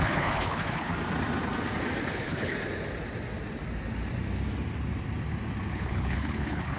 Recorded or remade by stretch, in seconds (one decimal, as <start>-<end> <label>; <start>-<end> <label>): 0.0-0.9 remade; 0.9-2.1 recorded; 2.1-2.5 remade; 2.5-5.7 recorded; 5.7-6.8 remade